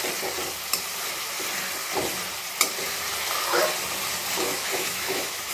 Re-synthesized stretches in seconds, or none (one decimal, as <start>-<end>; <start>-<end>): 4.5-5.5